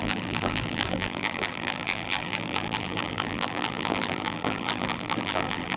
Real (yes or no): no